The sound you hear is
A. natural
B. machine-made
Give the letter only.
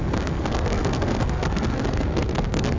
B